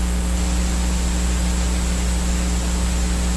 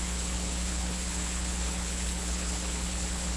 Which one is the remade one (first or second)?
second